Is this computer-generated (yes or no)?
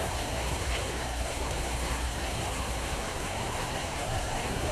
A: yes